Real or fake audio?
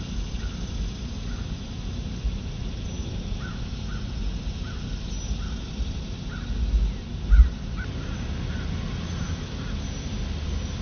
real